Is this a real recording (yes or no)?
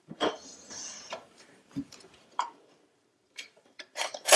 no